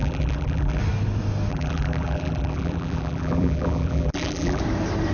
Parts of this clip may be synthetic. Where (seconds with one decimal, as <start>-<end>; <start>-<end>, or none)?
0.0-0.8; 1.5-4.6